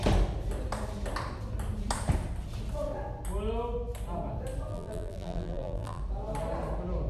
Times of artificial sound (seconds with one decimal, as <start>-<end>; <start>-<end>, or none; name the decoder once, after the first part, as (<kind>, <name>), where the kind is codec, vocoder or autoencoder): 4.7-6.0 (vocoder, BigVGAN v2)